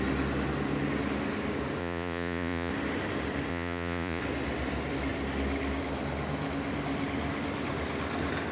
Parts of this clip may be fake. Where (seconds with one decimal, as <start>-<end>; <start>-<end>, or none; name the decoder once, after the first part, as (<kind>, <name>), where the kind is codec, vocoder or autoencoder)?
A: 1.8-2.7 (vocoder, Vocos); 3.5-4.2